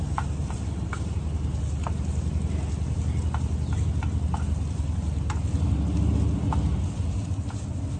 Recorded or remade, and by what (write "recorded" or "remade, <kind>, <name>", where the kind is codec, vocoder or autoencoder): recorded